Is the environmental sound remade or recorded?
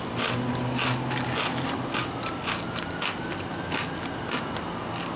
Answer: recorded